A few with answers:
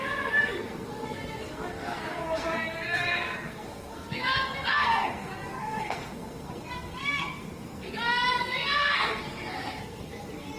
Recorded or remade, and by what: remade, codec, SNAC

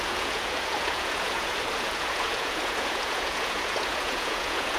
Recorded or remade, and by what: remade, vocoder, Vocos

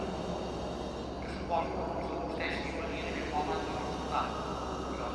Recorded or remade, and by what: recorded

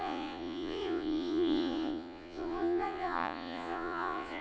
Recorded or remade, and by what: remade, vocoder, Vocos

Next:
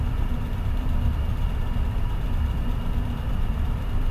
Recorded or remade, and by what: remade, vocoder, BigVGAN v2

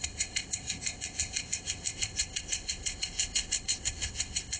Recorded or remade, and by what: remade, codec, ZipCodec